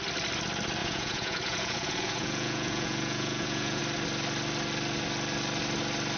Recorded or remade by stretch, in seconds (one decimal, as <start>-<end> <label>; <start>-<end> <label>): 0.0-0.8 recorded; 0.8-3.8 remade; 3.8-6.2 recorded